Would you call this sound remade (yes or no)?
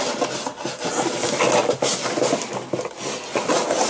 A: no